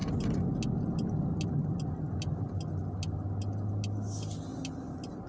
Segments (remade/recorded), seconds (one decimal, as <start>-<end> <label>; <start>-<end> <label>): 0.0-5.3 recorded